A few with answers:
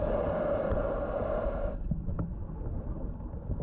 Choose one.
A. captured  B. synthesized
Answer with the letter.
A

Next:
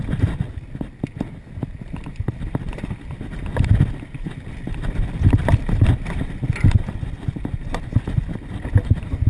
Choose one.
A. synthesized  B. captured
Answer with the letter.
B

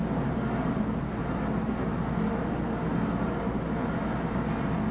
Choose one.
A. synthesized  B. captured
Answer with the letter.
B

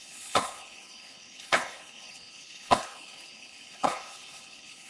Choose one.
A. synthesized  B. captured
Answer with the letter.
A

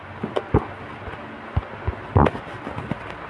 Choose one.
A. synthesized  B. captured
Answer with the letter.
B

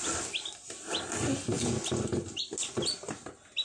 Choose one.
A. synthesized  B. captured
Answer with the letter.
B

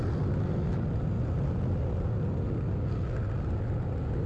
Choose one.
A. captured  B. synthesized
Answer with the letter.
A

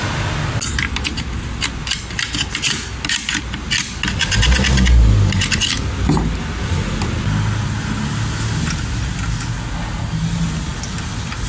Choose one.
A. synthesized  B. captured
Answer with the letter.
B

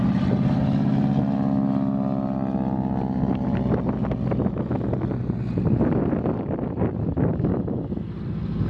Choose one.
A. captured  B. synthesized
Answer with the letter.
A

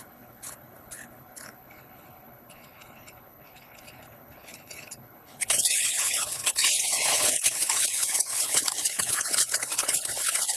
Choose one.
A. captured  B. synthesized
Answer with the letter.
B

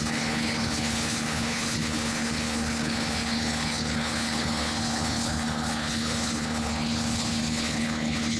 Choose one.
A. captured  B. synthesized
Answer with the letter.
B